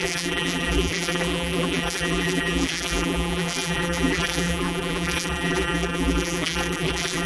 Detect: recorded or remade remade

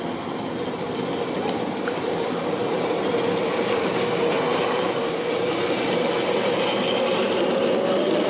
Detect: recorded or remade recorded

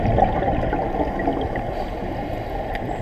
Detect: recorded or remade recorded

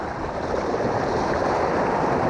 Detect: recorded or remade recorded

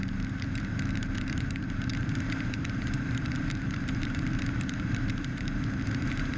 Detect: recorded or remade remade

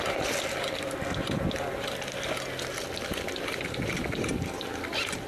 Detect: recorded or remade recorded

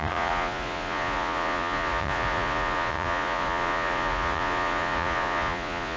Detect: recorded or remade remade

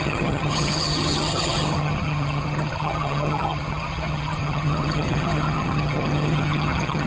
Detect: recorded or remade remade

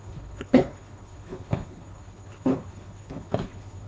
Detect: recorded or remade remade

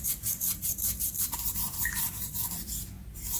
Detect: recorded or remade remade